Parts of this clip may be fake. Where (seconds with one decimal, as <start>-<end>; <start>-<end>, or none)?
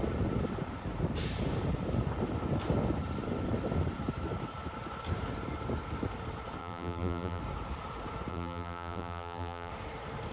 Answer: 6.6-7.4; 8.3-9.7